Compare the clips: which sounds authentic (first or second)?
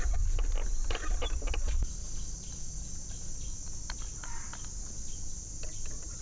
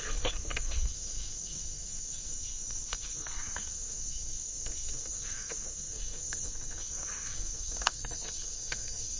first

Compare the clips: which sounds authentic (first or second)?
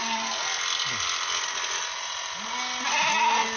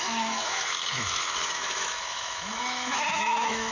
first